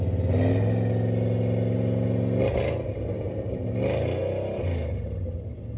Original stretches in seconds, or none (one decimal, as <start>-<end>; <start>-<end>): 0.0-5.8